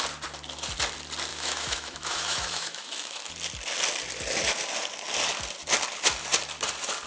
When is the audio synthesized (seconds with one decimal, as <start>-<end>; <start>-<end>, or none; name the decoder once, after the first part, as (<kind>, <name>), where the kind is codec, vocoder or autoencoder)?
1.3-3.3 (autoencoder, DAC-VAE)

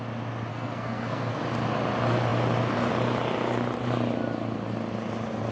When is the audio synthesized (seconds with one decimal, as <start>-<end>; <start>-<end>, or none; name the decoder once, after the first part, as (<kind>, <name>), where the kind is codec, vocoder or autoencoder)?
0.5-1.4 (codec, SNAC)